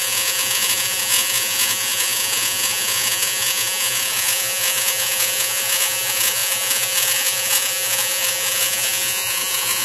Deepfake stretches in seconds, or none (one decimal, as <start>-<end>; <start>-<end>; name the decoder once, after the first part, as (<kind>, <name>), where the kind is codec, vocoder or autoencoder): 0.0-9.8 (vocoder, Vocos)